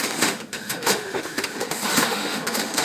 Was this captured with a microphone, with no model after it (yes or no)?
no